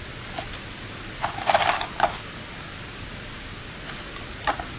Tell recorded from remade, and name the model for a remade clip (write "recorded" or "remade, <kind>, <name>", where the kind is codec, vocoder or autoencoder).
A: recorded